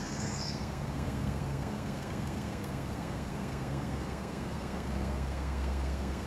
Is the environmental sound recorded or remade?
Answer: remade